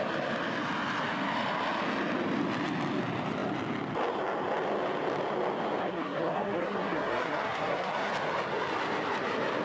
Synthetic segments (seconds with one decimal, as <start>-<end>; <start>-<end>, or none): 5.8-8.1